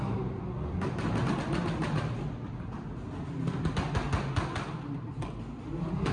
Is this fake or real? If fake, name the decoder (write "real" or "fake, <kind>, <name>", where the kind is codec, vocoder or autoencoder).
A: real